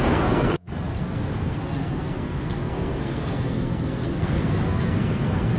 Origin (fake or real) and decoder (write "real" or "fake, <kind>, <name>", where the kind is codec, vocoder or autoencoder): fake, codec, SNAC